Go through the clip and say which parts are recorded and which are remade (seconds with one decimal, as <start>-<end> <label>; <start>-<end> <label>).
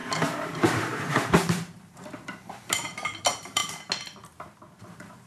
0.0-3.6 remade; 3.6-4.8 recorded; 4.8-5.3 remade